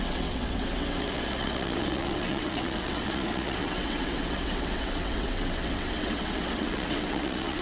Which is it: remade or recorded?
remade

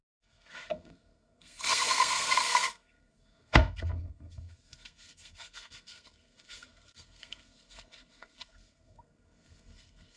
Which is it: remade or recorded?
remade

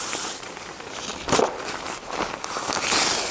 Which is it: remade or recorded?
recorded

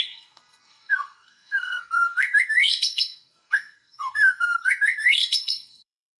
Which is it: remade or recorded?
remade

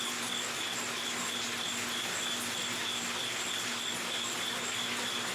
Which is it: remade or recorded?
recorded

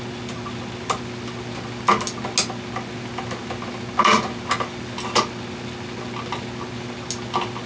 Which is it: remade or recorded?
recorded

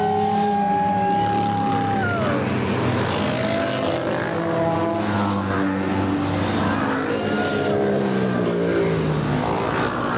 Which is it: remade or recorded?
recorded